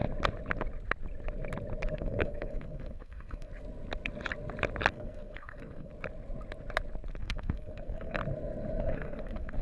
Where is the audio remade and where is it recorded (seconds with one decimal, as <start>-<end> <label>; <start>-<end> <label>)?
0.0-1.9 recorded; 1.9-3.5 remade; 3.5-4.9 recorded; 4.9-5.9 remade; 5.9-7.2 recorded; 7.2-8.2 remade; 8.2-8.8 recorded; 8.8-9.6 remade